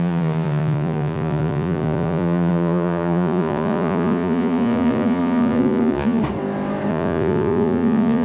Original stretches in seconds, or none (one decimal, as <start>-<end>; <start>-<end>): 6.2-6.9